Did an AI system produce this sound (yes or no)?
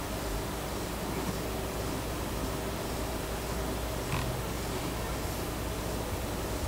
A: no